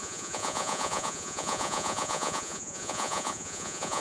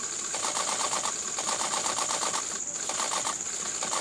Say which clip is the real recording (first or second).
second